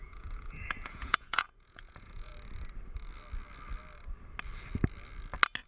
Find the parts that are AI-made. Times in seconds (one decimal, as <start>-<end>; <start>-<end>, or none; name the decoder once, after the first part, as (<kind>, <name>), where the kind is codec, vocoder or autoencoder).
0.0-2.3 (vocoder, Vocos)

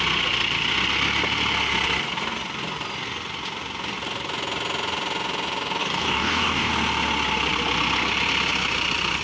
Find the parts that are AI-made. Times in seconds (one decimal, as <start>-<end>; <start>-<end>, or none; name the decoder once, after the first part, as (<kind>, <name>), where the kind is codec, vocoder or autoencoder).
5.8-6.7 (codec, DAC)

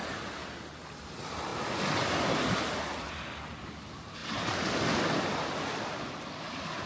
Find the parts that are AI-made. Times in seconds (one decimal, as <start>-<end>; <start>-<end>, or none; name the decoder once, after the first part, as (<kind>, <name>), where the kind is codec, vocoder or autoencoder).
4.2-5.0 (vocoder, BigVGAN v2)